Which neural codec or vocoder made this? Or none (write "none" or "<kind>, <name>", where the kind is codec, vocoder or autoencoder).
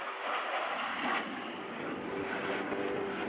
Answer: none